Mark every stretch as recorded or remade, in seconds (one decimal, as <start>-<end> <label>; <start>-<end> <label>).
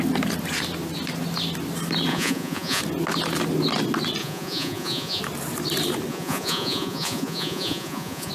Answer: 0.0-2.1 recorded; 2.1-2.8 remade; 2.8-4.2 recorded; 4.2-5.2 remade; 5.2-6.1 recorded; 6.1-8.3 remade